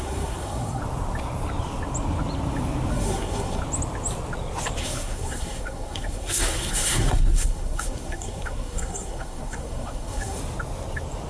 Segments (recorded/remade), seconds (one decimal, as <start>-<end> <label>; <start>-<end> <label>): 0.0-0.8 remade; 0.8-2.9 recorded; 2.9-3.6 remade; 3.6-4.8 recorded; 4.8-10.4 remade; 10.4-11.3 recorded

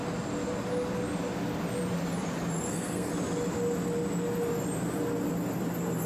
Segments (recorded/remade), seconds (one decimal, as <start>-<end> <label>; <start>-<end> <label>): 0.0-2.7 recorded; 2.7-3.1 remade; 3.1-6.1 recorded

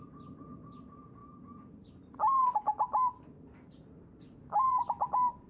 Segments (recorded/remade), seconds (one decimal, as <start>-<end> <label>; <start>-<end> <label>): 0.0-1.2 remade; 1.2-4.5 recorded; 4.5-5.5 remade

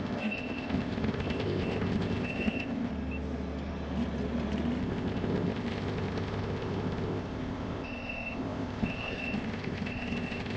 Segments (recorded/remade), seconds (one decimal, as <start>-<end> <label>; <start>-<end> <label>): 0.0-2.9 remade; 2.9-4.8 recorded; 4.8-10.6 remade

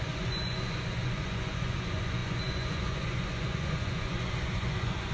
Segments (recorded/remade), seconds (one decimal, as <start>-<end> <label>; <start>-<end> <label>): 0.0-5.1 remade

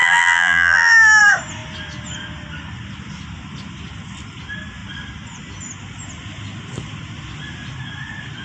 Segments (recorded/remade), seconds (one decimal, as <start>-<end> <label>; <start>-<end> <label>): 0.0-1.2 remade; 1.2-8.4 recorded